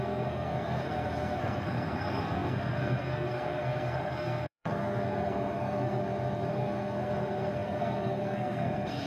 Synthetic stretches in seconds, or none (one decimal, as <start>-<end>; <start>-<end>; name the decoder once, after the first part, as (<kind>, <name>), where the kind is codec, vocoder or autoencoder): 0.0-6.0 (codec, SNAC); 6.5-9.1